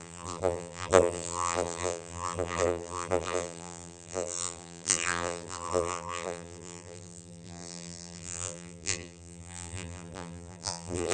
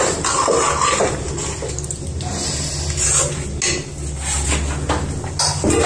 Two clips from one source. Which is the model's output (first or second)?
first